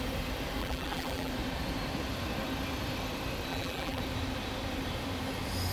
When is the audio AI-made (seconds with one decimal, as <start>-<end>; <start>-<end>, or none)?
0.6-1.3; 3.5-4.0